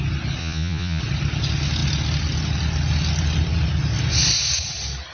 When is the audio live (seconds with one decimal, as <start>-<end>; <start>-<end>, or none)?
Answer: 0.0-0.4; 1.0-5.1